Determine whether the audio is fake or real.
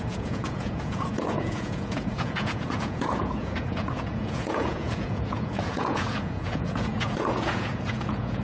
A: fake